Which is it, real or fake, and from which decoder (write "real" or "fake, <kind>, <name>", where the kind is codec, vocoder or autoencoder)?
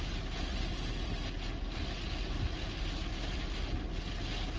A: real